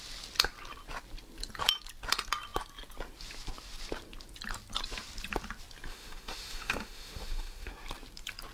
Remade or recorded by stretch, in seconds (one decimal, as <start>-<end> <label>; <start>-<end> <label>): 0.0-5.9 recorded; 5.9-7.7 remade; 7.7-8.5 recorded